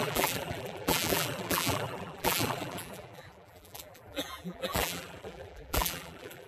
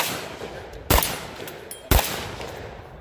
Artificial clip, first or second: first